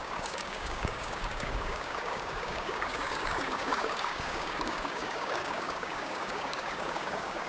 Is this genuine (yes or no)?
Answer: no